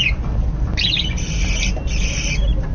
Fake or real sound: real